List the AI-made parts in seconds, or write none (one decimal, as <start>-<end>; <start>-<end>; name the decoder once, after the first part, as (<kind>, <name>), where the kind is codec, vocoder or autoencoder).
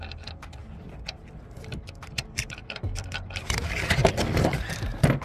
2.6-4.1 (vocoder, BigVGAN v2)